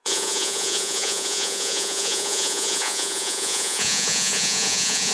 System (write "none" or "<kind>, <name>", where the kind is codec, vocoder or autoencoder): vocoder, Vocos